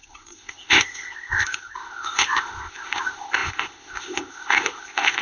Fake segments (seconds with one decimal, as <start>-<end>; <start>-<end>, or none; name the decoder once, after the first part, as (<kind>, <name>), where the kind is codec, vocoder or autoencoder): 0.0-5.2 (codec, ZipCodec)